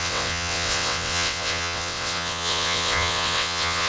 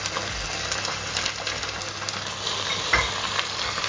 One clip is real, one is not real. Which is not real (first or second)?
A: first